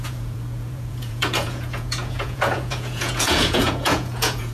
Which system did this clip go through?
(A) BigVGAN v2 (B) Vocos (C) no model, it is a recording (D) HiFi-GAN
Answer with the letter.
B